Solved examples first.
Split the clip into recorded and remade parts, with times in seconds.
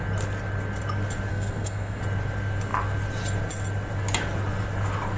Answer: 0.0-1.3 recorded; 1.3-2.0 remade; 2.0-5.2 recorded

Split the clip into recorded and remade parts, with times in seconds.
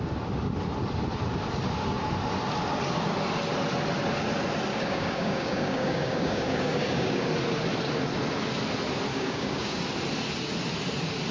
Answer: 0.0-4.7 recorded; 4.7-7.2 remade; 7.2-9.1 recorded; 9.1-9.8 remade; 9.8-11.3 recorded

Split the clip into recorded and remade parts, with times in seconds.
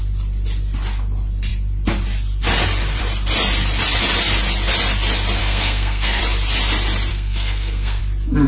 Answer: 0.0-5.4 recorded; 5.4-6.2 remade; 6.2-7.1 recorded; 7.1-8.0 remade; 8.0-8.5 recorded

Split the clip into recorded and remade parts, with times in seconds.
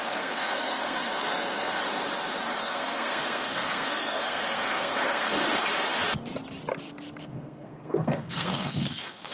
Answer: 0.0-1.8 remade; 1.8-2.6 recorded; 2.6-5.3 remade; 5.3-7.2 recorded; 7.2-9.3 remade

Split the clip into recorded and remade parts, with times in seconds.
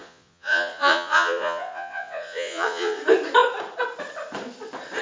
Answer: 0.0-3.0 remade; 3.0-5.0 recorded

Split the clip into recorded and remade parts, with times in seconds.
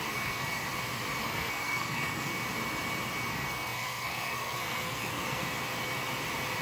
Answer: 0.0-0.6 remade; 0.6-1.2 recorded; 1.2-2.3 remade; 2.3-3.3 recorded; 3.3-5.4 remade; 5.4-6.6 recorded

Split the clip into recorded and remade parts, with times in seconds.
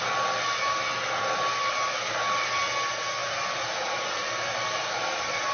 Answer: 0.0-5.5 recorded